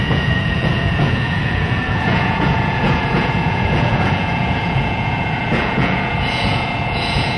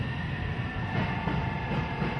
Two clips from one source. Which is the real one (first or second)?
second